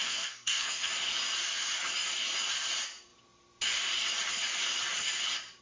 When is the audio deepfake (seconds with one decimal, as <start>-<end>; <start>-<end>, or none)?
0.0-0.9

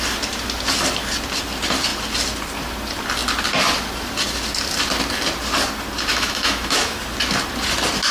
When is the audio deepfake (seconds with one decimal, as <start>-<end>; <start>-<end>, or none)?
6.1-7.0

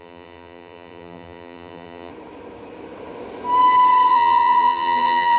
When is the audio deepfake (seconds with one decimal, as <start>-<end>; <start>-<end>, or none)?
0.0-2.1; 4.1-5.4